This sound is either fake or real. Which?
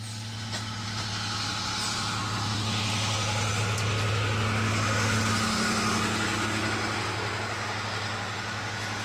real